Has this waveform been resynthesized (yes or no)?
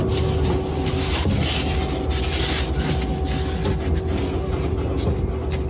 no